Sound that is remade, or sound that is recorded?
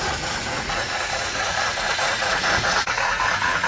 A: remade